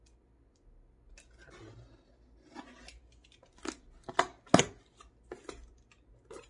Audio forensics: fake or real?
real